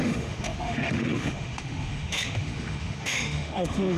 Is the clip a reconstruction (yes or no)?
yes